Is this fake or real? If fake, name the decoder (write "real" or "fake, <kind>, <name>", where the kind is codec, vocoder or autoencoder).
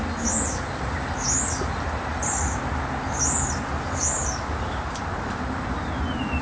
real